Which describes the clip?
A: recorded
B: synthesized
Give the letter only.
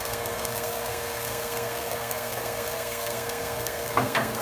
B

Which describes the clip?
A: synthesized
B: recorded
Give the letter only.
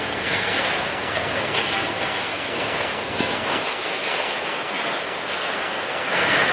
A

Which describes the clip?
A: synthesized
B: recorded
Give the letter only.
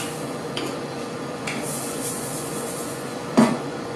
A